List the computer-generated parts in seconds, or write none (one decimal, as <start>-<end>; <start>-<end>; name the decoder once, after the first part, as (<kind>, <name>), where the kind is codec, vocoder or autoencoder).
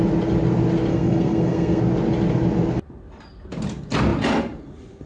0.9-1.8 (codec, SNAC)